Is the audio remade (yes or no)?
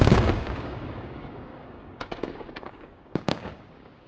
yes